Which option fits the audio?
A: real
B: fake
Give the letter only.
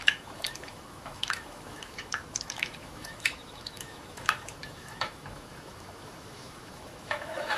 B